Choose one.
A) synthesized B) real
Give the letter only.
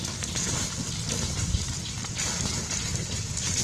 B